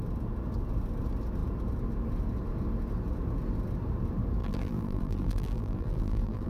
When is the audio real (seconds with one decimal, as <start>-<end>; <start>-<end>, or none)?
0.0-4.4